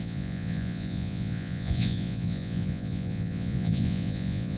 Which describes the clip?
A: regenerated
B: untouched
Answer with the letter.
A